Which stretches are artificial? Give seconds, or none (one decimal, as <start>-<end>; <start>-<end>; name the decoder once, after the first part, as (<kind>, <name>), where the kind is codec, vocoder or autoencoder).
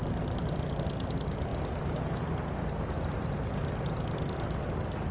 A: none